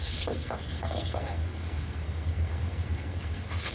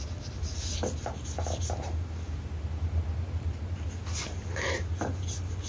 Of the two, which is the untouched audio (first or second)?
second